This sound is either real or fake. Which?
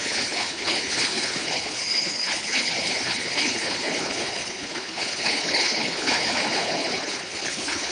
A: fake